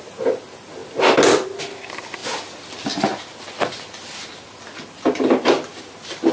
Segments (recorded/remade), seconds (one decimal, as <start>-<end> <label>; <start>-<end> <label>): 0.0-6.3 recorded